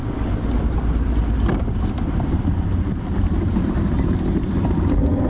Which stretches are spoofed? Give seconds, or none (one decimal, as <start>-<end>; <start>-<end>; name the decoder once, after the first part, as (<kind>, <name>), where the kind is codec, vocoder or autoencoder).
1.9-5.3 (vocoder, BigVGAN v2)